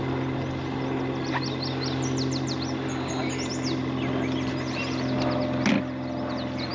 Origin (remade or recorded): recorded